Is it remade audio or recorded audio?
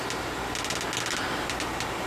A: recorded